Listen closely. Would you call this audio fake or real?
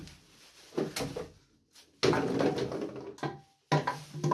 real